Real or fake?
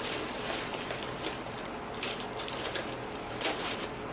fake